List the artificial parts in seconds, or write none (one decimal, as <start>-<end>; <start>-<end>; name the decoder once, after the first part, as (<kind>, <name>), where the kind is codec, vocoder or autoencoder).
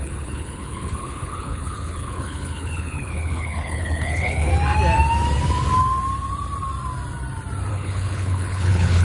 0.0-4.5 (codec, HILCodec); 7.7-9.0